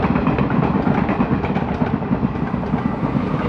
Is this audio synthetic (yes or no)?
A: no